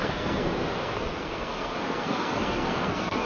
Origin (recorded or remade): remade